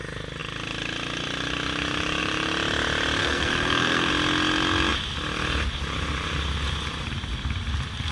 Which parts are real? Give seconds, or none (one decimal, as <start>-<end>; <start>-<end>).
0.0-3.2; 4.1-8.1